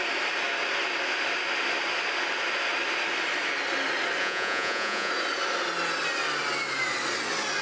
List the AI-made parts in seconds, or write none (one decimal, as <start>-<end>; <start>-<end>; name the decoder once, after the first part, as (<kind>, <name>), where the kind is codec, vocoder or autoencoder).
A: 4.2-5.1 (vocoder, Vocos)